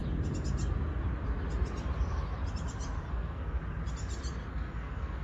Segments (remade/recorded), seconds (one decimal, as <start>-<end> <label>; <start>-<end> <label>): 0.0-3.1 recorded; 3.1-3.6 remade; 3.6-4.5 recorded; 4.5-5.2 remade